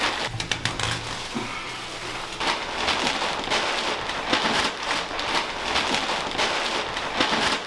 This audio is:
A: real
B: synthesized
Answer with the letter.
A